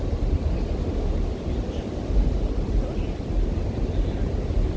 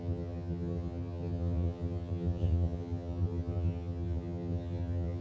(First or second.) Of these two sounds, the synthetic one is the second